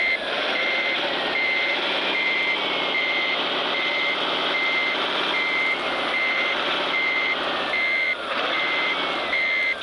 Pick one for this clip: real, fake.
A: fake